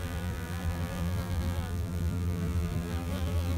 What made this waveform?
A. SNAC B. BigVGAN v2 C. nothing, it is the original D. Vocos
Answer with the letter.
B